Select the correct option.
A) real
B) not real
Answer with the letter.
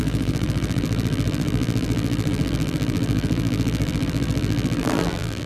B